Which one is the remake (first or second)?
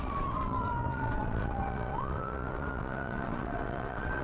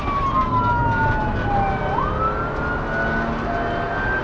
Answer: first